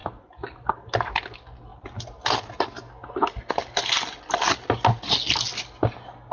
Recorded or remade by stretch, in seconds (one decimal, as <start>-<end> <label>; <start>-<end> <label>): 0.0-6.3 recorded